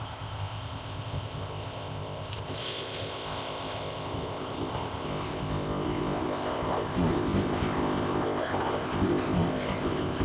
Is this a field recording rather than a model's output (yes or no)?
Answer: no